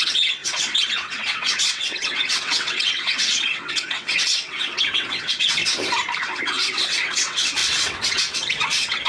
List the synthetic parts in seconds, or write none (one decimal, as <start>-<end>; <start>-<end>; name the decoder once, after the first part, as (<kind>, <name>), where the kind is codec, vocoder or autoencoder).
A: 0.0-5.6 (vocoder, WaveNeXt); 6.2-9.1